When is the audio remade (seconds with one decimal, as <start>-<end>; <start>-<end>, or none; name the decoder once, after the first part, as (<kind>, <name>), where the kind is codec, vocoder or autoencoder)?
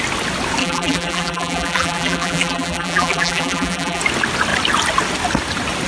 0.6-4.0 (vocoder, BigVGAN v2)